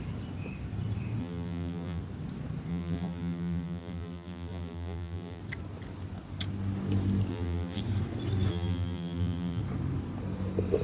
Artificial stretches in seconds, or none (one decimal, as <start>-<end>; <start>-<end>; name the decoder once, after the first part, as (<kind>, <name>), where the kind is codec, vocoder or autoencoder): 1.2-2.0 (vocoder, BigVGAN v2); 2.7-5.4; 7.3-7.8; 8.5-9.6